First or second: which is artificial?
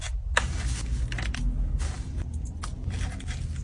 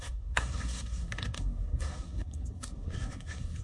second